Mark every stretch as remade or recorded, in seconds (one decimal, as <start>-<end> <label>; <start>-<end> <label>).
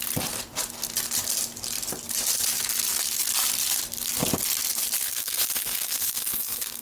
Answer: 0.0-5.0 recorded; 5.0-6.8 remade